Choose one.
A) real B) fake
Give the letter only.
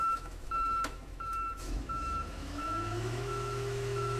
B